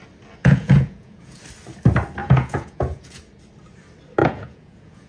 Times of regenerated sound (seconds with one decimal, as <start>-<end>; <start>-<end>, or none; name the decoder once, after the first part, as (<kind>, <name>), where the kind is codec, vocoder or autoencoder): 0.4-1.4 (vocoder, Vocos); 2.2-3.2; 4.2-5.1